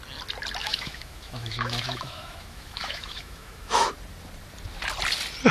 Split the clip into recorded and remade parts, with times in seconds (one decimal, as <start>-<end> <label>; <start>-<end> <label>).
0.0-0.6 recorded; 0.6-3.9 remade; 3.9-5.5 recorded